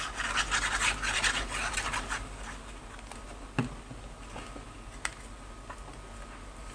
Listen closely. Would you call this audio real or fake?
real